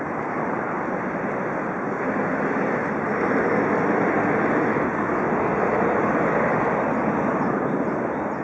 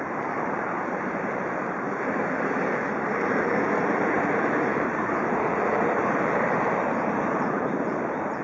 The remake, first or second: second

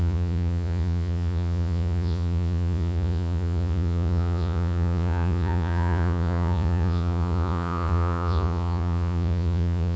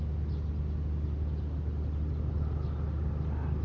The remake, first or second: first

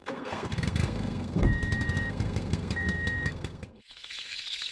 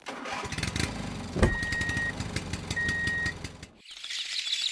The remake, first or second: first